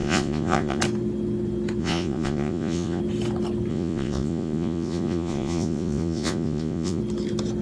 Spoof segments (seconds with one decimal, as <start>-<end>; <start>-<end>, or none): 0.0-0.8; 1.8-3.0; 3.7-7.0